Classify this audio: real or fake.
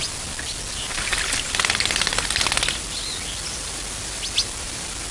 real